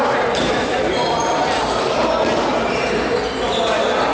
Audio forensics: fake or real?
real